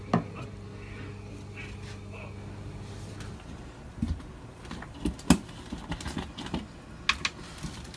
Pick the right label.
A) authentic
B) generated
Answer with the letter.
A